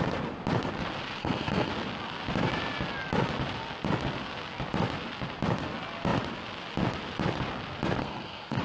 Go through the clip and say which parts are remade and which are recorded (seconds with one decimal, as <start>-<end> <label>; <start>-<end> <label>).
0.0-1.2 recorded; 1.2-1.7 remade; 1.7-8.0 recorded; 8.0-8.6 remade